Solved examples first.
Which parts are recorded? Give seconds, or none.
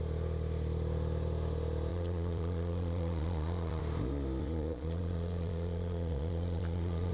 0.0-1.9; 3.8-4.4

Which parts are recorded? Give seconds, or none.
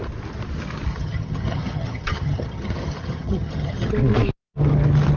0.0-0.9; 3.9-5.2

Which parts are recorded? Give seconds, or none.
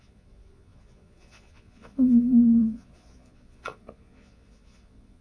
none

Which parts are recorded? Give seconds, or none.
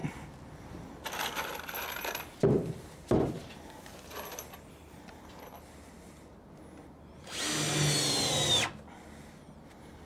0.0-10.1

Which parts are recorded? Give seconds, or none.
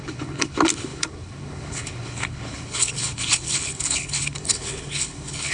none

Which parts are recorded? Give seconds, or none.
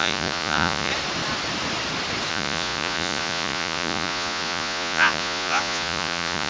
0.9-2.3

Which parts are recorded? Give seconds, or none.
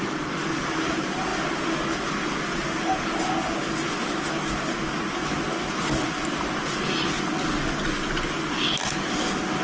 0.0-9.6